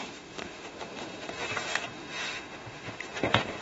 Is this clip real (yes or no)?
no